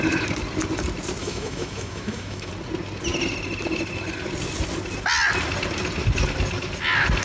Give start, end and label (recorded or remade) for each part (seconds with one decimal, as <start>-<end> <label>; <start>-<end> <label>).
0.0-1.2 recorded; 1.2-2.5 remade; 2.5-7.2 recorded